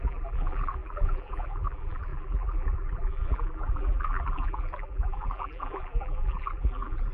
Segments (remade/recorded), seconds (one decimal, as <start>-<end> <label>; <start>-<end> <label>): 0.0-7.1 remade